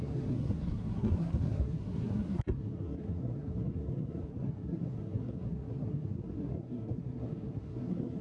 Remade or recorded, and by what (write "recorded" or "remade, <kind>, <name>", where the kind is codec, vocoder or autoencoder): remade, codec, SNAC